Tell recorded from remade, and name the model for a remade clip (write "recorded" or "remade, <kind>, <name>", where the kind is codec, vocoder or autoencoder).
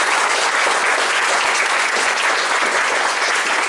remade, vocoder, Vocos